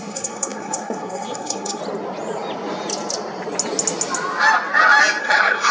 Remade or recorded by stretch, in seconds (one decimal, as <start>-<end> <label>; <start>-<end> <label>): 0.0-1.8 remade; 1.8-5.2 recorded; 5.2-5.7 remade